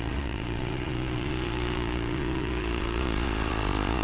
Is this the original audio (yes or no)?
no